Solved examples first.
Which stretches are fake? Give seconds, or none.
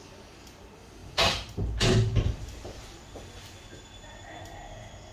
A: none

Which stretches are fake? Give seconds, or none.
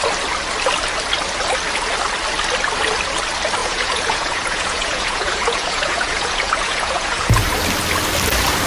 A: 3.6-7.4 (vocoder, Vocos)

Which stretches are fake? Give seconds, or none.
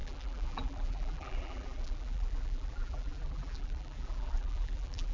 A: 0.0-5.1 (vocoder, BigVGAN v2)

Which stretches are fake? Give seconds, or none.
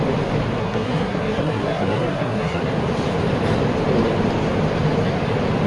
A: 0.6-2.6 (codec, SNAC)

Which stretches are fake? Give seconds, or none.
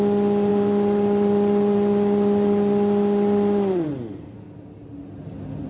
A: 0.5-3.9 (vocoder, BigVGAN v2)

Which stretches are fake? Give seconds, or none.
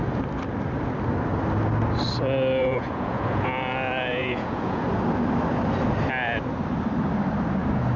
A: 2.6-3.5 (vocoder, Vocos); 4.1-4.8